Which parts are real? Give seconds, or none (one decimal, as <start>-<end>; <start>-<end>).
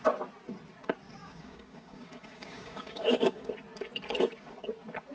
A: 0.0-1.2; 3.5-5.1